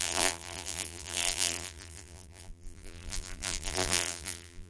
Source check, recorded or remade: remade